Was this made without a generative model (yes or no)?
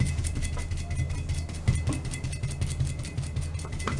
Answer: yes